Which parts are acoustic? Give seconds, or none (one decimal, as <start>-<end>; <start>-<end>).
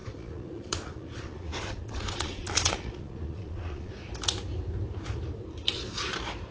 3.9-6.5